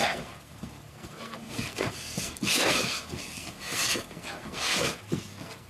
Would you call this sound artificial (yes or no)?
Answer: yes